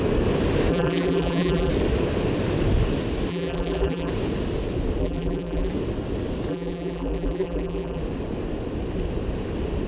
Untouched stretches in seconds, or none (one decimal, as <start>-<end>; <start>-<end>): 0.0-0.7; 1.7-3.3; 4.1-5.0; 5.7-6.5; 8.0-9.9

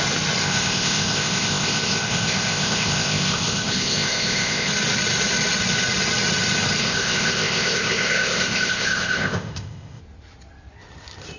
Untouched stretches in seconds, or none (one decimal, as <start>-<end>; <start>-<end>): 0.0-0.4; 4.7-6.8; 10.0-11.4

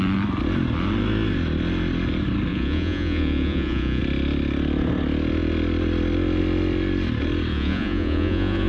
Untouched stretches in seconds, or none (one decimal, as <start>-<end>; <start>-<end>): 0.0-2.5; 4.0-7.5

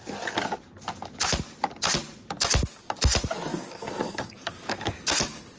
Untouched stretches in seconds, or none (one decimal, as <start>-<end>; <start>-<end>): 0.0-3.5; 4.9-5.6

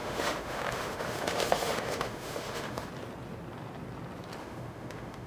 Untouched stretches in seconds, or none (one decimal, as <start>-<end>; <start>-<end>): 2.9-4.4

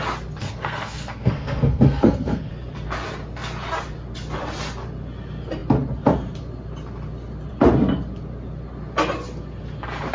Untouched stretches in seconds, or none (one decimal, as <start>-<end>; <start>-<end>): 0.0-0.4; 2.5-10.1

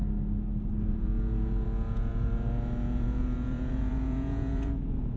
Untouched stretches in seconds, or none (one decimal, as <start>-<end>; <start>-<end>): 0.0-0.9